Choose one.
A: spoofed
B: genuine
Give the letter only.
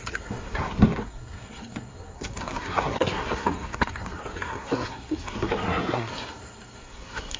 A